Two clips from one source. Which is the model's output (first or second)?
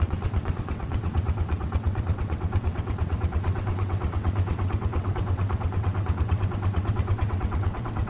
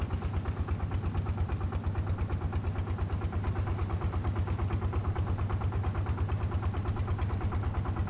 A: first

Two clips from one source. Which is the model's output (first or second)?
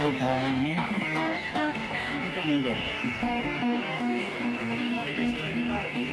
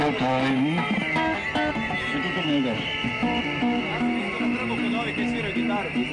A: first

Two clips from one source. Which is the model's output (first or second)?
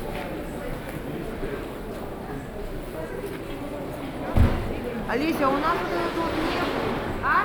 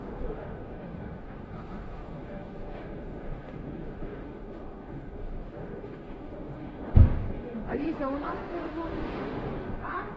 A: second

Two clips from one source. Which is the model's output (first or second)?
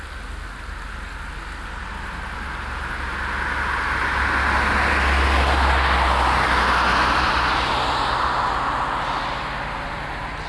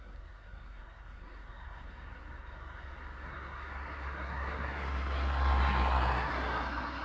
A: second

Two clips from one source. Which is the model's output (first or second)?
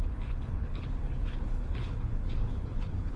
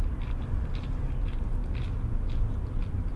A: first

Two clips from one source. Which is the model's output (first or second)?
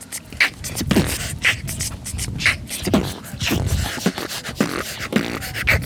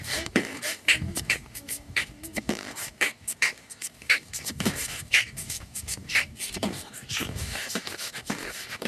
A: second